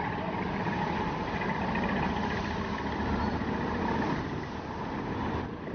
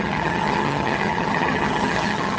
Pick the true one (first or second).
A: first